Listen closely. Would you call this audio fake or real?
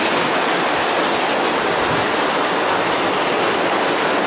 real